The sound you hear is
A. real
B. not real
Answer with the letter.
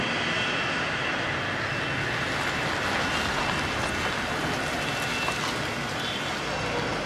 A